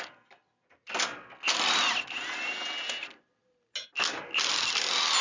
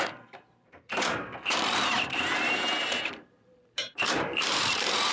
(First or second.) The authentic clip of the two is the first